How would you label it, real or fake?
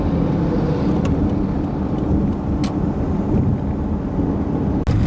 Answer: real